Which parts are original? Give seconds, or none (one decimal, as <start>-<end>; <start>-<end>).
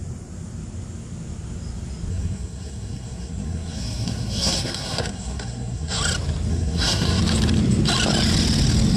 0.0-2.1; 6.0-6.5; 7.2-9.0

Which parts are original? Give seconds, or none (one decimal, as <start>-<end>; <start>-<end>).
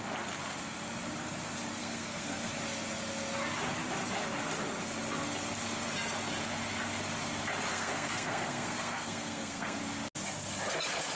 0.0-1.8; 2.5-7.7; 9.8-11.2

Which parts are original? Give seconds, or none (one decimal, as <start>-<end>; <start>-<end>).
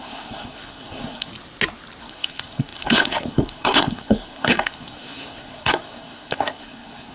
1.3-2.0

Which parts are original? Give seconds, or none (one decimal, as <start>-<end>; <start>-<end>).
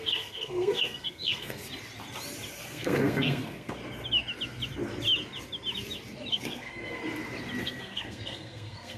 1.6-2.6; 3.8-6.3; 7.0-7.6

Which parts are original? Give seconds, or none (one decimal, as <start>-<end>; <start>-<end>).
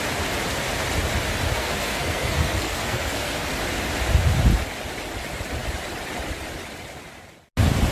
0.0-1.6; 3.5-7.9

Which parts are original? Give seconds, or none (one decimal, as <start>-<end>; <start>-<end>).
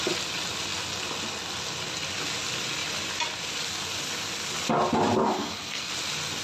0.0-5.2; 5.9-6.4